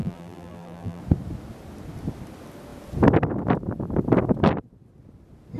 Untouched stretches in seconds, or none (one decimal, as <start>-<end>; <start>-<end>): 1.0-5.6

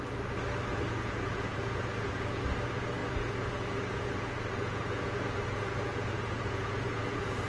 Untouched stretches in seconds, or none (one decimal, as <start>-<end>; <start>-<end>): 0.0-0.7; 2.4-3.0

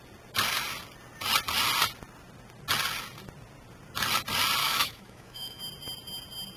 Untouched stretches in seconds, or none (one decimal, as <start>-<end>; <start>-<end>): 0.0-4.6; 5.6-6.6

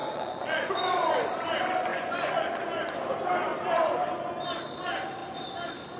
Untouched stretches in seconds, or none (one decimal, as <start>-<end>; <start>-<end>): 0.7-1.9; 2.5-6.0